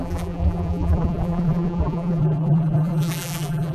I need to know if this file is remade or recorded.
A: remade